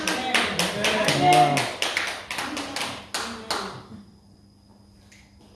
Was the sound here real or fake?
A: real